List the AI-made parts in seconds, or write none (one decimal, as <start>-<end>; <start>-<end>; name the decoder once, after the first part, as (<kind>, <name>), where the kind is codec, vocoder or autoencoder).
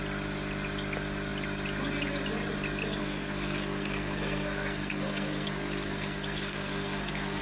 3.0-7.4 (codec, SNAC)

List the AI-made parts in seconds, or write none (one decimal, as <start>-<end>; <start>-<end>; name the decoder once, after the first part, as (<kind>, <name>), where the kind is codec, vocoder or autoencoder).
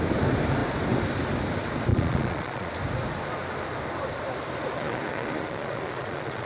1.9-2.7 (vocoder, Vocos); 4.7-6.5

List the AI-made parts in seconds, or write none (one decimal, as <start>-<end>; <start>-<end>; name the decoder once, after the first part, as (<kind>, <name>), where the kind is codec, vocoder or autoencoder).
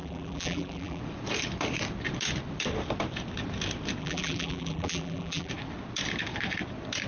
0.0-1.0 (vocoder, BigVGAN v2); 4.0-5.5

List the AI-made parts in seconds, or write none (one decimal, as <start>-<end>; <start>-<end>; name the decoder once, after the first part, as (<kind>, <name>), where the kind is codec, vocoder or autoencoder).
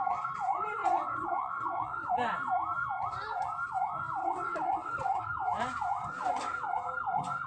0.8-2.1 (vocoder, WaveNeXt); 4.2-5.2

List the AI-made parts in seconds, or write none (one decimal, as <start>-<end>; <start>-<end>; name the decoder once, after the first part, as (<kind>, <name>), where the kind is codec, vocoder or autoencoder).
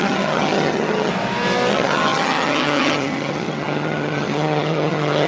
0.0-1.1 (vocoder, HiFi-GAN); 1.7-5.3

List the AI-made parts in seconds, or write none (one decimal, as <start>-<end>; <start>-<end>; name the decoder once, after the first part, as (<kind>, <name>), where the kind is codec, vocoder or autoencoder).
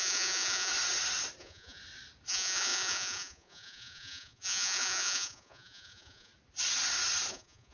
0.0-0.7 (vocoder, Vocos); 1.4-1.8; 2.3-6.3; 7.3-7.7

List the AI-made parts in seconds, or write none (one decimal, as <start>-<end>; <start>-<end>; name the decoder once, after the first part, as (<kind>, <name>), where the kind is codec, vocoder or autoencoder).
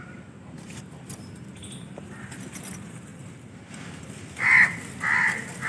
1.6-2.2 (vocoder, BigVGAN v2)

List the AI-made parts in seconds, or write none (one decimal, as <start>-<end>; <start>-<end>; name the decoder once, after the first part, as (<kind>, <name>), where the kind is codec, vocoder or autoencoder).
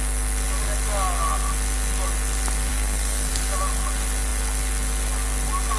2.7-3.3 (codec, SNAC)